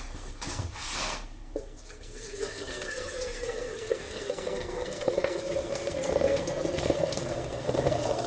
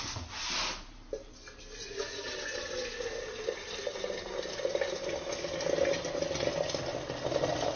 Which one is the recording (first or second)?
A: second